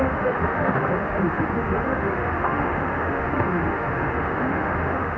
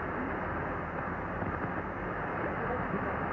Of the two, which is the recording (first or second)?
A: second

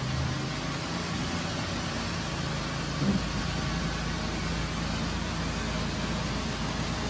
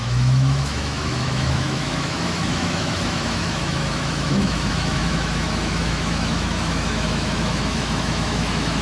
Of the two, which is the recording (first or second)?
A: first